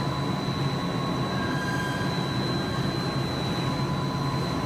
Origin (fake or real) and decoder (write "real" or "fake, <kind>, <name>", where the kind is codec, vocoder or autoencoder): real